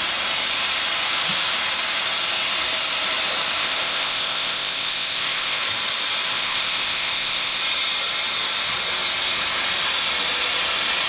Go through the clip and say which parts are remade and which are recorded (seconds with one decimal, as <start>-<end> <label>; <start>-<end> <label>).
0.0-3.6 recorded; 3.6-5.6 remade; 5.6-6.3 recorded; 6.3-7.6 remade; 7.6-11.1 recorded